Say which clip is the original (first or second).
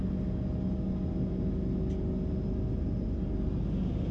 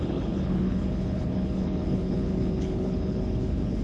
first